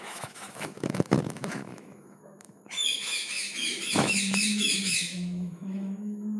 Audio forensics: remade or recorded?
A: remade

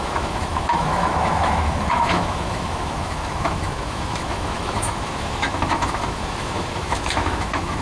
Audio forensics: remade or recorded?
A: remade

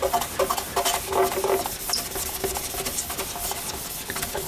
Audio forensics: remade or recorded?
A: recorded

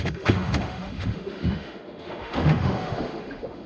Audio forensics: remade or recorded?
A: remade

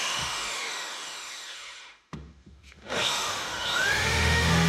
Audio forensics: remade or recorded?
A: remade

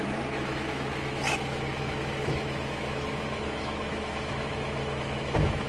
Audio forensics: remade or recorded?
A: remade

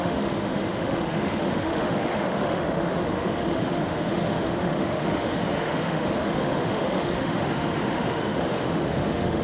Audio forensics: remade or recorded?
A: remade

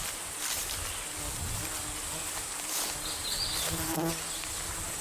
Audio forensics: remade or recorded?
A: recorded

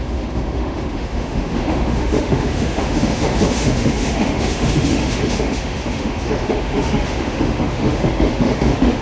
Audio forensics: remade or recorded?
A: remade